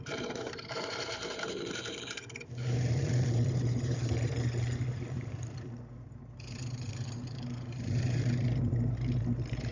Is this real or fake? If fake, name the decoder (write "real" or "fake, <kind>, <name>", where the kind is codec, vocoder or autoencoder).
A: fake, vocoder, BigVGAN v2